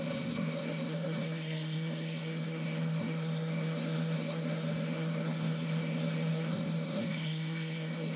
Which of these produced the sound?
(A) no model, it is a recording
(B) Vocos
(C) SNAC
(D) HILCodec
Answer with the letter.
C